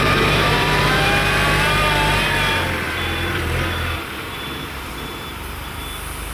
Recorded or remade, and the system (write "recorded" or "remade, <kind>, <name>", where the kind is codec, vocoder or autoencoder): remade, vocoder, BigVGAN v2